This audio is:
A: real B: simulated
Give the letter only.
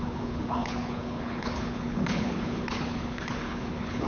B